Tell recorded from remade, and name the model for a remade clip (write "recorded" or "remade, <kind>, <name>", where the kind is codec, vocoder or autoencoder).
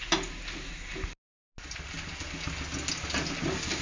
recorded